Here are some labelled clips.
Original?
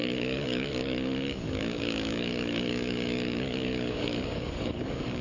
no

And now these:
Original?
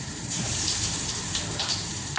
no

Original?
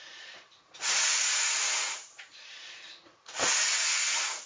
no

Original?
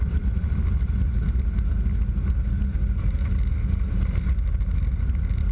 yes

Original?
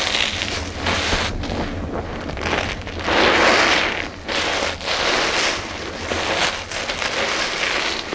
yes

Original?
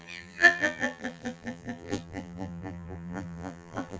no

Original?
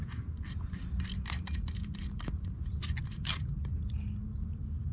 yes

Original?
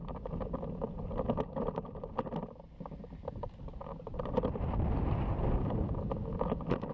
yes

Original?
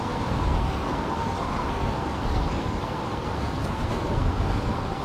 no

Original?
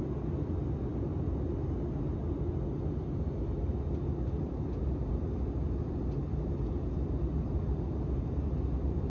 yes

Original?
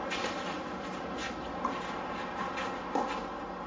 yes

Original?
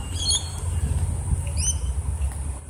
yes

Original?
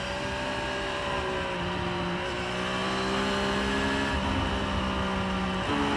yes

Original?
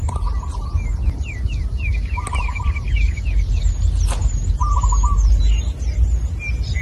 yes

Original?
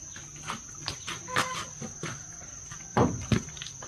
yes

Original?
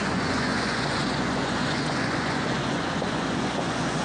no